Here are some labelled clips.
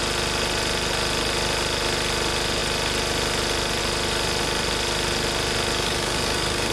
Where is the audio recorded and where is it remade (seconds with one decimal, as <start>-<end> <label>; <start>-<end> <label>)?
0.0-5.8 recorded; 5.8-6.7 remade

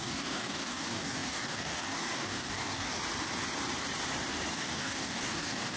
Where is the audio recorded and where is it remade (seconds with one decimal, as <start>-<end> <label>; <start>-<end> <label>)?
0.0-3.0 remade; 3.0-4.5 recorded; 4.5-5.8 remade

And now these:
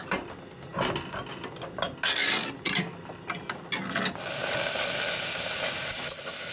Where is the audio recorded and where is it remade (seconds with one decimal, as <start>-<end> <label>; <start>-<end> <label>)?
0.0-6.5 recorded

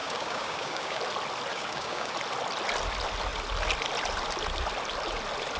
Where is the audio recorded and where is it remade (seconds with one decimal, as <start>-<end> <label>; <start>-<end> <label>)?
0.0-1.0 remade; 1.0-1.5 recorded; 1.5-2.1 remade; 2.1-5.6 recorded